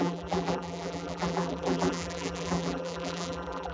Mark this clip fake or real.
fake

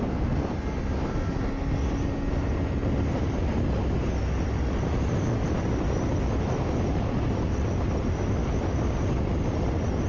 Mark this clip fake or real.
real